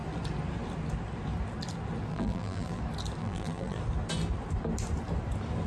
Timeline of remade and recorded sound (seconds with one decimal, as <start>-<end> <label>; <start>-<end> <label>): 0.0-2.1 recorded; 2.1-2.8 remade; 2.8-3.2 recorded; 3.2-3.8 remade; 3.8-5.7 recorded